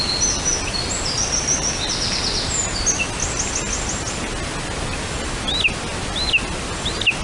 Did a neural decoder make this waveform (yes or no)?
no